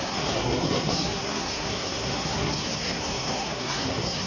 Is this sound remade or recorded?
remade